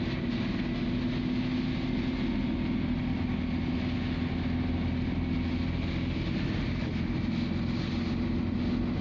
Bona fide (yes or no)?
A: yes